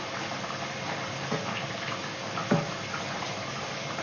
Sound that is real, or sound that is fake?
real